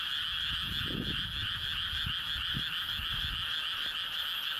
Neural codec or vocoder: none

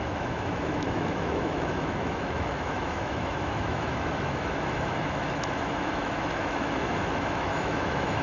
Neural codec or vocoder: autoencoder, DAC-VAE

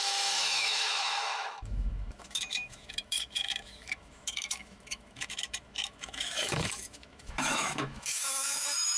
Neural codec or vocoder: autoencoder, DAC-VAE